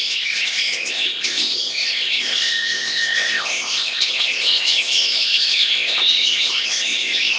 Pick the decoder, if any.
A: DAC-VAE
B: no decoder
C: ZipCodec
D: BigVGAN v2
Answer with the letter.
C